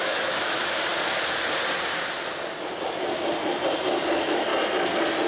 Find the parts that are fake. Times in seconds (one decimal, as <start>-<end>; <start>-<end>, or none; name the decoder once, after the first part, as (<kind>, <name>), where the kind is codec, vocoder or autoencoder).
0.0-0.9 (autoencoder, DAC-VAE); 4.1-4.5